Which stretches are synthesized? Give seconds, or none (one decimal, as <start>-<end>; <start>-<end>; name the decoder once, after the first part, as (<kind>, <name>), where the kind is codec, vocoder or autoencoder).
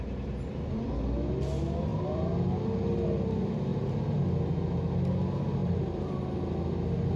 3.7-4.2 (vocoder, BigVGAN v2); 5.6-6.2